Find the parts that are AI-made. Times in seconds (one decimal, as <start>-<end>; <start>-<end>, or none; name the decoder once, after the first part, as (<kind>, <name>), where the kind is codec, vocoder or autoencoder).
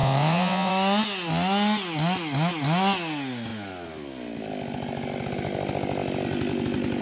0.0-0.7 (vocoder, WaveNeXt)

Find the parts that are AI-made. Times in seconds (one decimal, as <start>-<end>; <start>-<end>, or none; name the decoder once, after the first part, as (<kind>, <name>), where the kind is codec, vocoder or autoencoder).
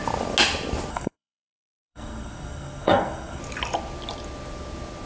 0.9-3.4 (codec, SNAC)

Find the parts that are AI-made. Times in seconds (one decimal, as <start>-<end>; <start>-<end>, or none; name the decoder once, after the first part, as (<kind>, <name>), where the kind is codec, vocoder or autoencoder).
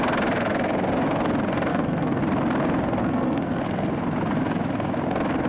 1.7-2.2 (codec, SNAC); 3.0-3.6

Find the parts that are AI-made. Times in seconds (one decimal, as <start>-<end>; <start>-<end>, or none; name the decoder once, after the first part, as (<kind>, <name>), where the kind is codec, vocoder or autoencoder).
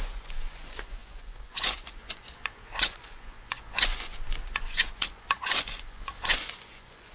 0.0-7.1 (vocoder, Vocos)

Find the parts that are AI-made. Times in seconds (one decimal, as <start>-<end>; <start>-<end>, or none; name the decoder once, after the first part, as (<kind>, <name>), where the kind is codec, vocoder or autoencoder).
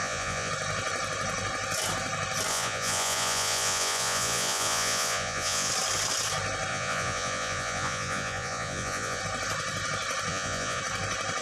0.0-0.5 (vocoder, Vocos); 2.5-5.7; 6.7-9.2; 10.3-10.8